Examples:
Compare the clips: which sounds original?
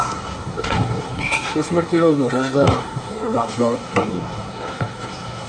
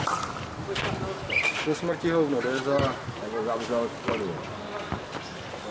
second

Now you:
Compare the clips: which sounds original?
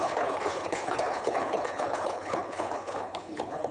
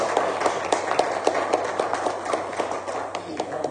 second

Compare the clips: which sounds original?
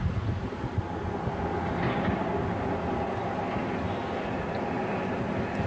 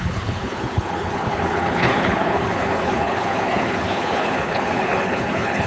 first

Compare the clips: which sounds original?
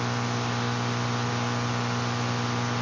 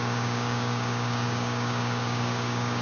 first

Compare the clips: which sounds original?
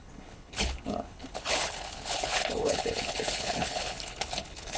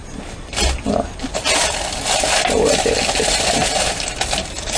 second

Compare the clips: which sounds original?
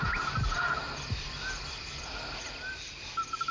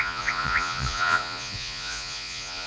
first